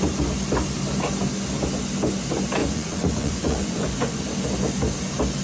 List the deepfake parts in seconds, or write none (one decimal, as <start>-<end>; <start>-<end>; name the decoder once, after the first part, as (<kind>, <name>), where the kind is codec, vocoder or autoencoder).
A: 2.6-4.2 (vocoder, Vocos)

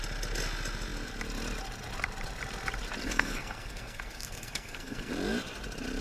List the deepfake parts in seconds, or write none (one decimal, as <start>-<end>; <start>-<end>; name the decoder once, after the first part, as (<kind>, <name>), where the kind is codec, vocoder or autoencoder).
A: 3.0-5.1 (codec, SNAC)

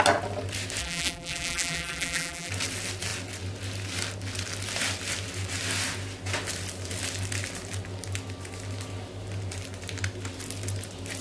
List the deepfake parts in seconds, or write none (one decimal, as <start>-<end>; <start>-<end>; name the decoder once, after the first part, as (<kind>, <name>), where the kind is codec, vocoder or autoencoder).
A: 0.8-2.5 (vocoder, BigVGAN v2)